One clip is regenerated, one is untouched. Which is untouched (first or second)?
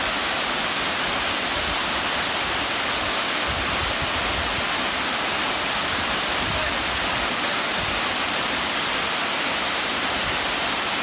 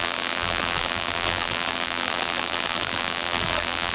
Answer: first